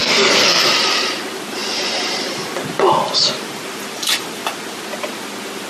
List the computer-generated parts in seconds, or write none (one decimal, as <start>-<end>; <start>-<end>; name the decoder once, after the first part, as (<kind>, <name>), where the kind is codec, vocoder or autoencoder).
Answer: 0.0-0.6 (codec, SNAC)